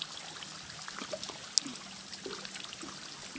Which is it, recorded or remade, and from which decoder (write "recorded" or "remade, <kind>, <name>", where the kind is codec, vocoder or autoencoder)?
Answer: recorded